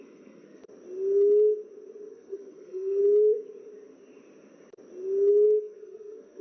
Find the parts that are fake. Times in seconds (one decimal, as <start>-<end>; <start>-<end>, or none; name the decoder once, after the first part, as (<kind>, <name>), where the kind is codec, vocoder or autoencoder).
0.0-0.6 (codec, SNAC); 2.1-3.0; 5.3-6.4